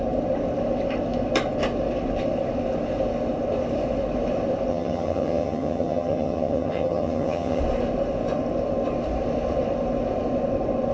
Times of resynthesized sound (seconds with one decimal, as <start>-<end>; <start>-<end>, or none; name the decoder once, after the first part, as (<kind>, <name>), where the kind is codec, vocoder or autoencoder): 4.7-7.6 (vocoder, HiFi-GAN)